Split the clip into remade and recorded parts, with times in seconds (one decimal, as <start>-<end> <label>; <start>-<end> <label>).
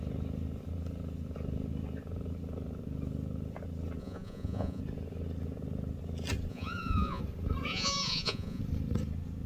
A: 0.0-4.0 recorded; 4.0-4.8 remade; 4.8-6.5 recorded; 6.5-7.2 remade; 7.2-7.7 recorded; 7.7-8.6 remade; 8.6-9.5 recorded